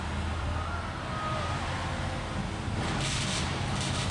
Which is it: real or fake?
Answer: real